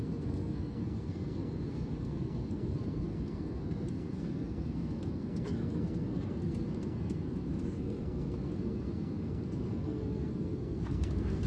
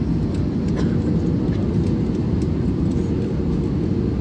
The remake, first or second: first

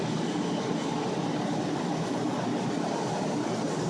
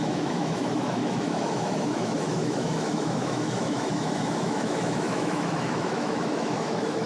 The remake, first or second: second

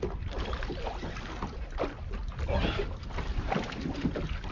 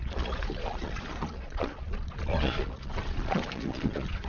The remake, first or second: second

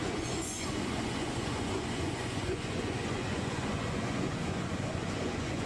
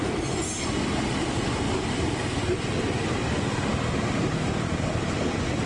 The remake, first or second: first